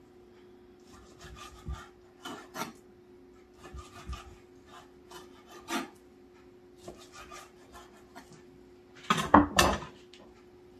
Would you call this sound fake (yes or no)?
no